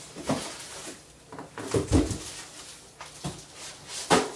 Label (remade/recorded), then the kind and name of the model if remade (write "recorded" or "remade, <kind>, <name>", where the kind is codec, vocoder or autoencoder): recorded